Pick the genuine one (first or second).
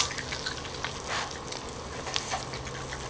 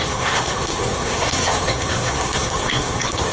first